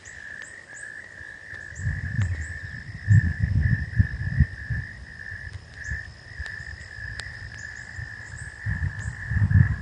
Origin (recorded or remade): recorded